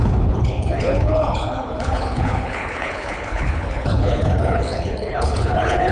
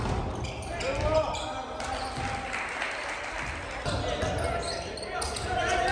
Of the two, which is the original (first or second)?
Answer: second